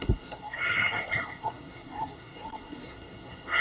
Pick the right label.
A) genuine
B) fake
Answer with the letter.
B